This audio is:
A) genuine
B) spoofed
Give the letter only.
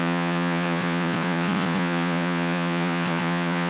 B